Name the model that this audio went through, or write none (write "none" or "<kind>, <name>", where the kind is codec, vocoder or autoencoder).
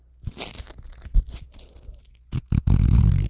none